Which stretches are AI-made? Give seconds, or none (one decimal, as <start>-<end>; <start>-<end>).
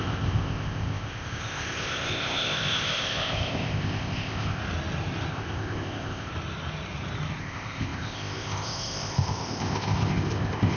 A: 0.0-4.6; 5.3-6.3; 7.4-10.8